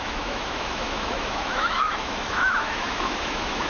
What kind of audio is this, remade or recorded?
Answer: remade